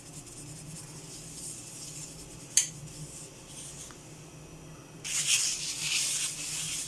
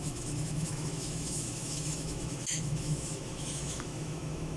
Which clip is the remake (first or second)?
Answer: second